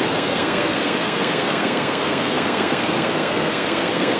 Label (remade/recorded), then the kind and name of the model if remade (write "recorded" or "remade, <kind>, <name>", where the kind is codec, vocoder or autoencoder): remade, codec, SNAC